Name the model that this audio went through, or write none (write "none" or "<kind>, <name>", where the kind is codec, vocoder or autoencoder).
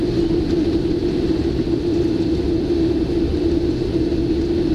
none